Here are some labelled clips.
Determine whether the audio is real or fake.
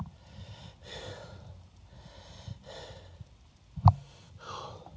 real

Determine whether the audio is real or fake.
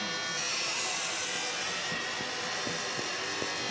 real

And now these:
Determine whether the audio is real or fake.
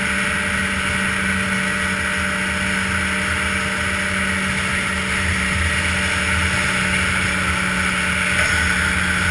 real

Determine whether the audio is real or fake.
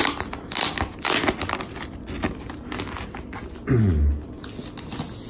real